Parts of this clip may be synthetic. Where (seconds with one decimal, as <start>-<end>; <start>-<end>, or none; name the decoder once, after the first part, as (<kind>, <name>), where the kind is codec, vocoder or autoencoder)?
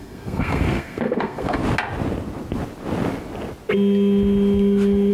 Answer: 0.0-1.6 (codec, SNAC)